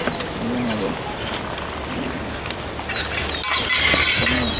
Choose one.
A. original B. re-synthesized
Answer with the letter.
A